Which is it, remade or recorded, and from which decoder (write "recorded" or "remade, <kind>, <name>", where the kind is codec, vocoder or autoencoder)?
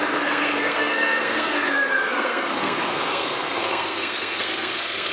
remade, codec, SNAC